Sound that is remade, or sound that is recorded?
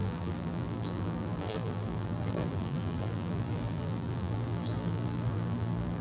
remade